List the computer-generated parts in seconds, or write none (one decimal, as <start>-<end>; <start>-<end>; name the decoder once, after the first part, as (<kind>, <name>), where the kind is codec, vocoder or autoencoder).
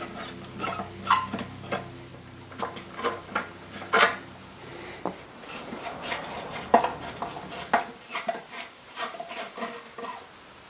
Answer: 2.1-6.8 (vocoder, BigVGAN v2); 8.1-9.4